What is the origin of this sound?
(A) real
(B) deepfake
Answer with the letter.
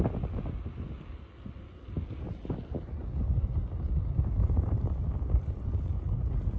A